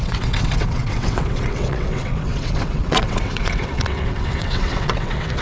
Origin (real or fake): fake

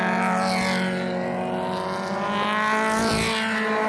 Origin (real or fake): real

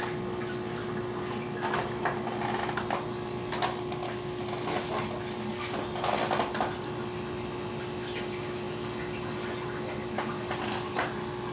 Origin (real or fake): real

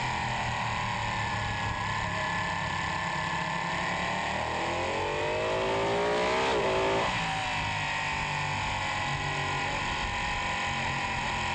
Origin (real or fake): real